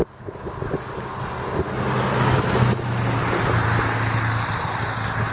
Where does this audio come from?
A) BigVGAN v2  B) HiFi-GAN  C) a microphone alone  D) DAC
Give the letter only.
C